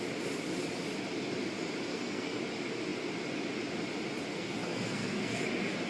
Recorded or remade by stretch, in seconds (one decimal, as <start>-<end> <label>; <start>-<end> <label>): 0.0-1.9 recorded; 1.9-2.4 remade; 2.4-4.3 recorded; 4.3-5.4 remade; 5.4-5.9 recorded